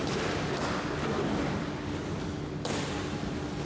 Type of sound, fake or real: real